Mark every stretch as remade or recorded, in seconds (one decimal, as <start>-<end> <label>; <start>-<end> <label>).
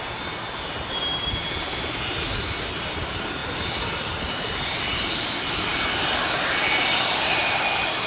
0.0-8.1 recorded